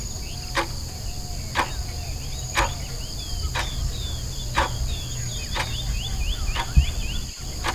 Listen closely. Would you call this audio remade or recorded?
recorded